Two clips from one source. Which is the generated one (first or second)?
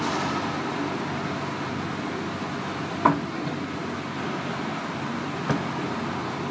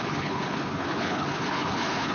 second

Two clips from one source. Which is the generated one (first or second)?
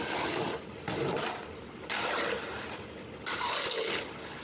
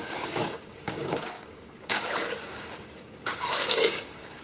second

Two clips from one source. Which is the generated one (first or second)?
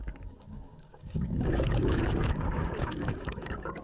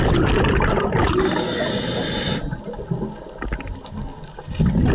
first